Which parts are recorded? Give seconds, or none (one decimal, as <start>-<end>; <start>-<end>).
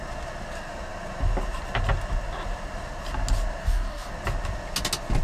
0.0-3.6; 4.1-5.2